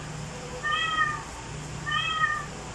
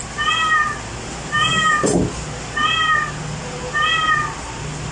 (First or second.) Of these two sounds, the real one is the second